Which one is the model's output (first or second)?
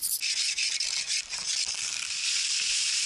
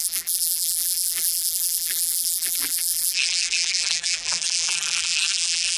second